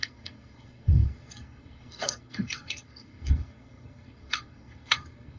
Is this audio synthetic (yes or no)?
yes